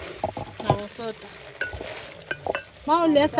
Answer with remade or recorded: recorded